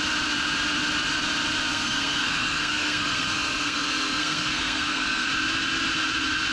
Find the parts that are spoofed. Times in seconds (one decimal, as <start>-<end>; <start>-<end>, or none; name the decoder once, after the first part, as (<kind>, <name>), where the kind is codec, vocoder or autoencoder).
1.7-5.3 (codec, SNAC)